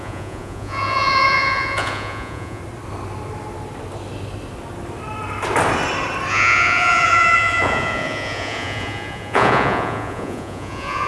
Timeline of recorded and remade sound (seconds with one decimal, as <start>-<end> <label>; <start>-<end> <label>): 0.0-2.6 remade; 2.6-6.3 recorded; 6.3-11.1 remade